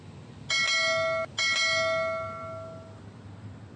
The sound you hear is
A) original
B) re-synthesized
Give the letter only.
A